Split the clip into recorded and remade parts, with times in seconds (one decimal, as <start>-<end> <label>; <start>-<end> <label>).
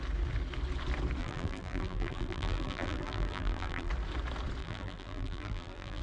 0.0-1.2 recorded; 1.2-3.9 remade; 3.9-4.6 recorded; 4.6-6.0 remade